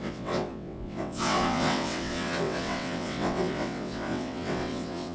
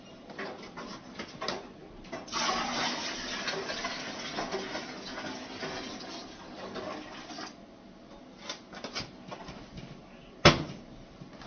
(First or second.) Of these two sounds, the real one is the second